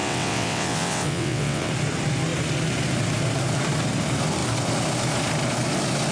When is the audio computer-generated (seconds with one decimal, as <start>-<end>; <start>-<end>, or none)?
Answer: 0.0-1.7